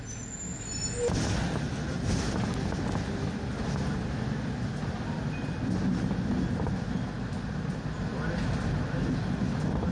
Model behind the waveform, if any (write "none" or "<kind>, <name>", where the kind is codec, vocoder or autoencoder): none